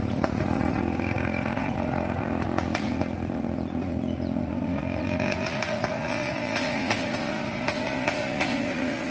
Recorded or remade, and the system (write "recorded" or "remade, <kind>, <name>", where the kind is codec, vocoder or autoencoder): remade, vocoder, Vocos